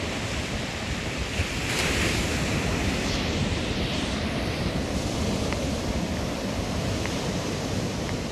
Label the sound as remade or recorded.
remade